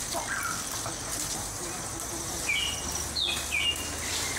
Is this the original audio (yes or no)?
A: yes